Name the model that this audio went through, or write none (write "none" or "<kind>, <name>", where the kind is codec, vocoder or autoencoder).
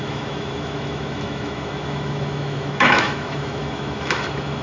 autoencoder, DAC-VAE